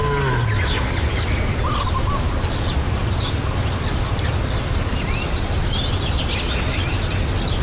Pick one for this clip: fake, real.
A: real